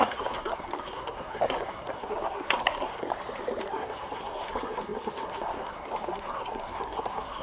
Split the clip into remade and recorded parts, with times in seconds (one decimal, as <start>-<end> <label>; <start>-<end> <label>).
0.0-3.1 remade; 3.1-3.7 recorded; 3.7-7.4 remade